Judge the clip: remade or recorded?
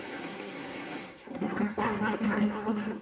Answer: remade